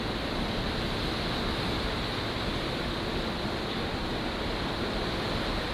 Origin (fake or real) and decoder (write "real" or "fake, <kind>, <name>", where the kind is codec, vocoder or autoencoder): real